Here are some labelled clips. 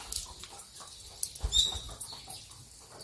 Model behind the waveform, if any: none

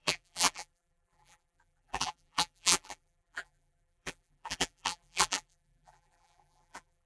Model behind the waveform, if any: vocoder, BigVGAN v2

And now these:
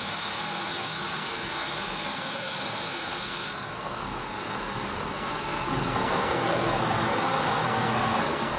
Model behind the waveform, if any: codec, SNAC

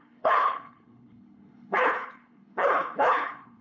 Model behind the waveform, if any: codec, HILCodec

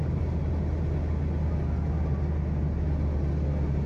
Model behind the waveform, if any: none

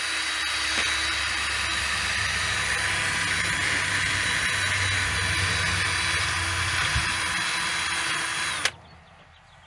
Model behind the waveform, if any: none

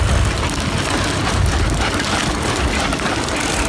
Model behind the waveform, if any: none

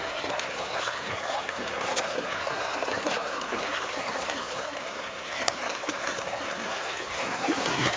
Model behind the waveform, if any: codec, SNAC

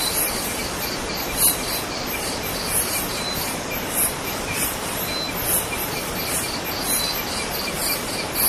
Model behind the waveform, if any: none